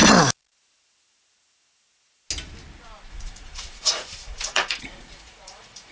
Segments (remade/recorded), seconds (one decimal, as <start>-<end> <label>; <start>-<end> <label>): 0.0-3.1 recorded; 3.1-5.9 remade